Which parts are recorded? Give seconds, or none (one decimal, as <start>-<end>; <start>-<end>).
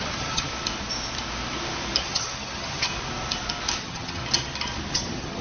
0.5-2.0; 2.9-3.8; 4.2-4.9